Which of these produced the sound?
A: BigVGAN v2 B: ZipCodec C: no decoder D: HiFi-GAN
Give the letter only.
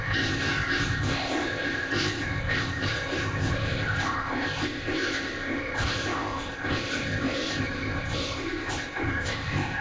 B